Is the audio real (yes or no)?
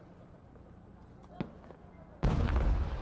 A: yes